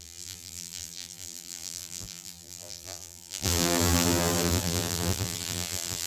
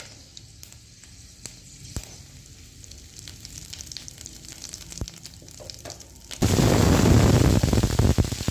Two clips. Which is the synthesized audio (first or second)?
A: first